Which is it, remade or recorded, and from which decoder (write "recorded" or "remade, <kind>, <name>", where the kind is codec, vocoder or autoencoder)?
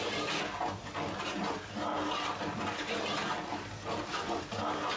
recorded